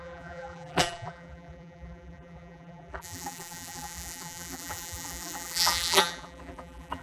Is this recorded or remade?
remade